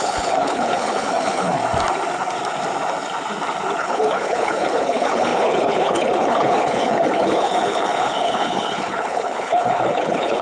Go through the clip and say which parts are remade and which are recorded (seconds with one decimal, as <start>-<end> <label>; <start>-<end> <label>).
0.0-1.6 remade; 1.6-3.8 recorded; 3.8-10.4 remade